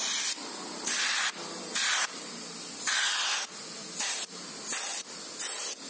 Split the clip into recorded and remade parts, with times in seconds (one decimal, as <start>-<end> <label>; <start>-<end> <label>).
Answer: 0.0-5.9 recorded